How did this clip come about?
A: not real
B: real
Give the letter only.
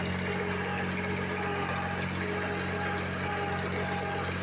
B